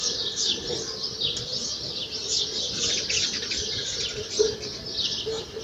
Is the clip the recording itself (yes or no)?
yes